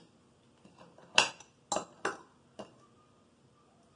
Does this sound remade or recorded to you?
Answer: recorded